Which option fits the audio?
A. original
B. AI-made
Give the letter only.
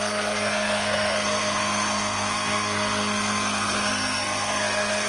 B